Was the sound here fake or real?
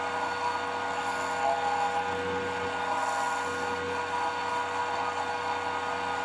real